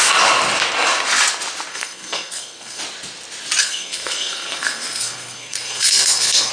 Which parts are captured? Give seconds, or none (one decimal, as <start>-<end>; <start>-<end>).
0.0-1.7; 2.8-3.6